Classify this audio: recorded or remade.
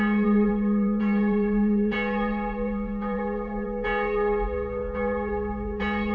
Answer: remade